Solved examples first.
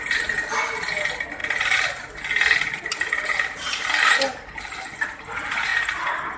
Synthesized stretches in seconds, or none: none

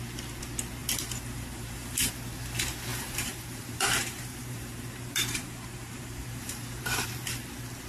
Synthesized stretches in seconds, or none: 0.8-2.1; 2.9-7.0

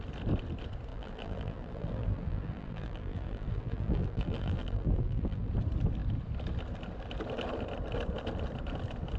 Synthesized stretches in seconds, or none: 0.9-5.5

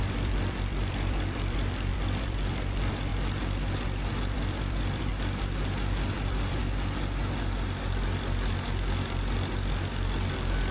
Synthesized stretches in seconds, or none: 0.0-3.1; 4.1-5.1; 6.1-6.6

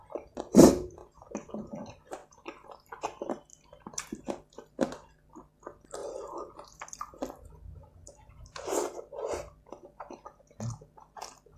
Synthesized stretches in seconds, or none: 6.0-7.5